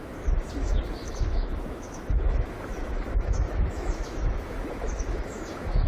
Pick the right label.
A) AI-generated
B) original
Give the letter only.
A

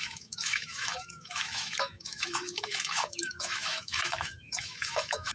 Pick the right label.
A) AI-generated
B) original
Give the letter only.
A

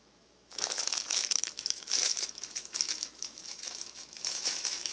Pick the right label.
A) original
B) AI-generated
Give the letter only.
B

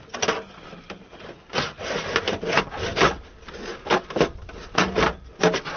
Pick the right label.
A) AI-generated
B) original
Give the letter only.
B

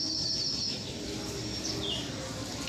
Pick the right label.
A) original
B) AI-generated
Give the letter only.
A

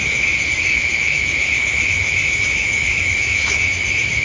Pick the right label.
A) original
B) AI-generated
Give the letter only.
B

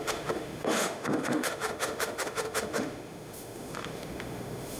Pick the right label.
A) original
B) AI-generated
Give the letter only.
B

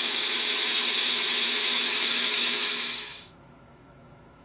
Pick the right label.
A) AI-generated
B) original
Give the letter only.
A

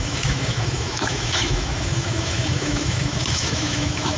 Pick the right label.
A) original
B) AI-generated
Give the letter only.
B